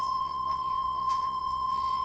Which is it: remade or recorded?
remade